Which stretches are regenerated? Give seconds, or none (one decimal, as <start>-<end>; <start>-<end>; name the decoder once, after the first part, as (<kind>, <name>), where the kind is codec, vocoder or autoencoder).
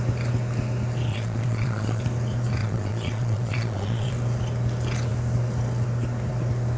1.1-2.0 (vocoder, Vocos); 2.6-4.1